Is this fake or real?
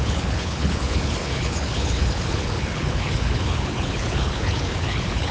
fake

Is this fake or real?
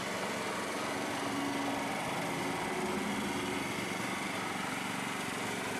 real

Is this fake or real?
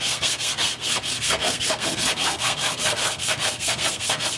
fake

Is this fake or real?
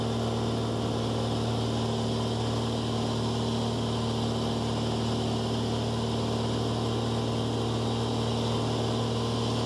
real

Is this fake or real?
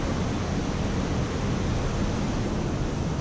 real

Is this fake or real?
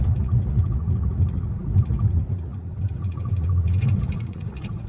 fake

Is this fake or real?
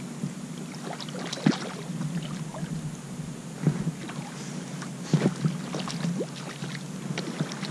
real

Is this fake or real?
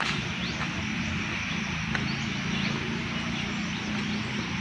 real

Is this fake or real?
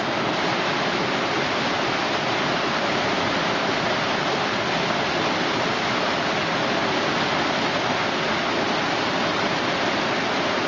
real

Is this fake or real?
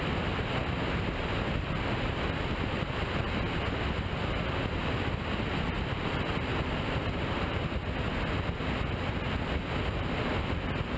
real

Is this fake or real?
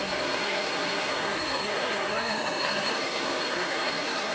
fake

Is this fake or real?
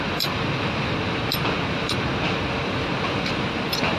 fake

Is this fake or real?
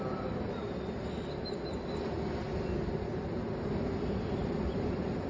real